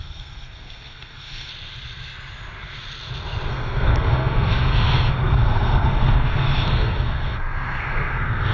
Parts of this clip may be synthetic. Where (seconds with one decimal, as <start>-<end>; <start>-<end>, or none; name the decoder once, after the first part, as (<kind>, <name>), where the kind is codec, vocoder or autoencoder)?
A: 0.0-1.5 (codec, SNAC); 3.5-8.5